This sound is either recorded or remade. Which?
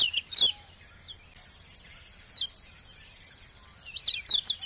recorded